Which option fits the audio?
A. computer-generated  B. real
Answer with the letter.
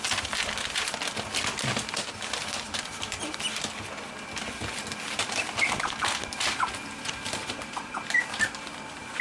B